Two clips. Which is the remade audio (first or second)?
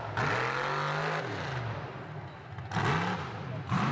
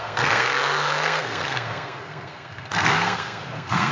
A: second